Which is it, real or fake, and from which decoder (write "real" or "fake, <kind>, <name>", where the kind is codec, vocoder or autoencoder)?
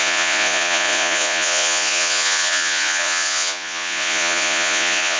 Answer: fake, vocoder, Vocos